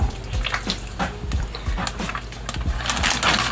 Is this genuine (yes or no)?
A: yes